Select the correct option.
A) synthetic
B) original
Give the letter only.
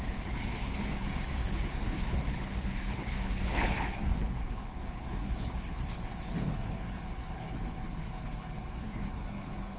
A